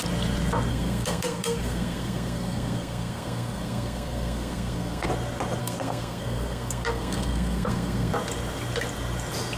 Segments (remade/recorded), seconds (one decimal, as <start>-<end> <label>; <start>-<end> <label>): 0.0-0.7 recorded; 0.7-5.1 remade; 5.1-5.6 recorded; 5.6-8.1 remade; 8.1-9.6 recorded